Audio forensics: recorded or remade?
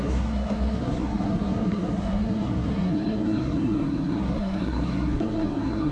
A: remade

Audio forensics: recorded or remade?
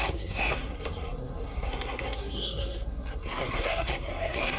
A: remade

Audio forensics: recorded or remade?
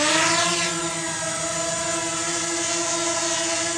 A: recorded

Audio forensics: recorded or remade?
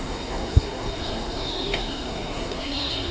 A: remade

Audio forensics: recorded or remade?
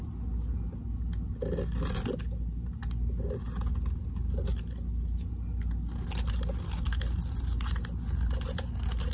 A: recorded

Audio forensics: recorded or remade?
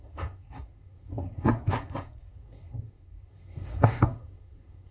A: remade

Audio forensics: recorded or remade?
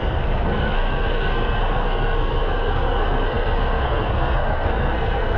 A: remade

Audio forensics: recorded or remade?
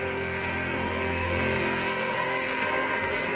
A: remade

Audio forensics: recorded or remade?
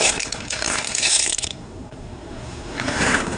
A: remade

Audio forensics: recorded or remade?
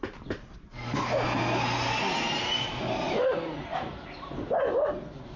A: recorded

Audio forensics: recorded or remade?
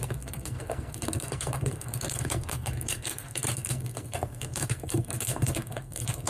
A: remade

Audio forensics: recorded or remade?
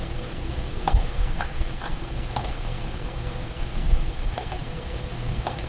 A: remade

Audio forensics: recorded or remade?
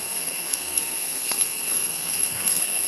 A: remade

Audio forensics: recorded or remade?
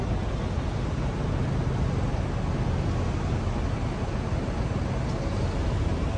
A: recorded